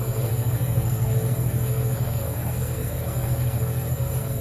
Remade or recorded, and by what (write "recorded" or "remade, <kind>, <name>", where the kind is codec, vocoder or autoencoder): remade, codec, SNAC